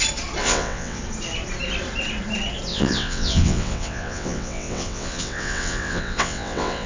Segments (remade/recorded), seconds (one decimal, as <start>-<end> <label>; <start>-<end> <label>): 0.0-0.4 recorded; 0.4-1.0 remade; 1.0-2.7 recorded; 2.7-6.9 remade